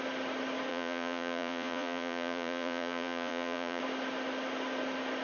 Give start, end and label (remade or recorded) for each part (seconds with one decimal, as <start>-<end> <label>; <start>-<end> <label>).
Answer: 0.0-0.7 recorded; 0.7-3.8 remade; 3.8-5.2 recorded